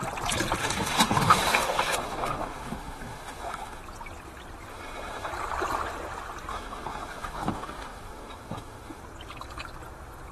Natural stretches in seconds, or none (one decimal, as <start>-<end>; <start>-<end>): 0.0-0.6; 3.8-4.7; 5.3-6.5; 9.0-10.3